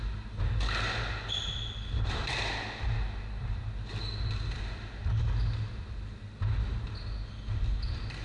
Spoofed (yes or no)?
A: no